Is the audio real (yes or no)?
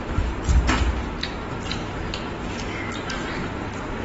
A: yes